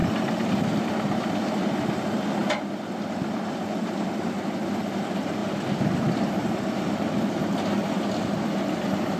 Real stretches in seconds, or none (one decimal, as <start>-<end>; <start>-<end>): 0.0-9.2